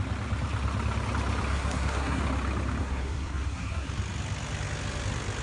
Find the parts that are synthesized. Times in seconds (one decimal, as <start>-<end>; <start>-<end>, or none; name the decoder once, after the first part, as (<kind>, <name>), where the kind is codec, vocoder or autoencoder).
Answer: 1.5-2.2 (codec, SNAC); 2.8-3.9